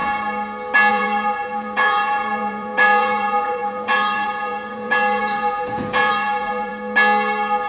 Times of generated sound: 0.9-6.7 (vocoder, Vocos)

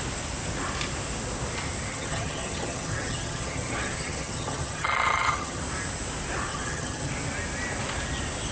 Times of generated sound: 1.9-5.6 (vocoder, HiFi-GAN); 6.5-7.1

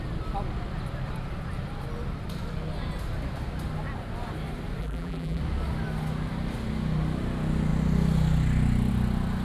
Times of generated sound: 4.8-5.4 (vocoder, BigVGAN v2)